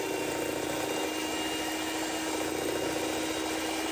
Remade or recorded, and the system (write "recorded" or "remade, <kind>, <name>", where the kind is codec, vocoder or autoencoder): recorded